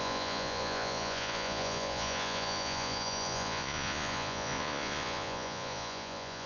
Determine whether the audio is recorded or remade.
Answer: remade